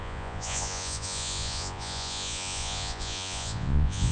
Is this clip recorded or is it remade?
remade